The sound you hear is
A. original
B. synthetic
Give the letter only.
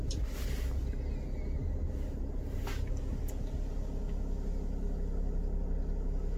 A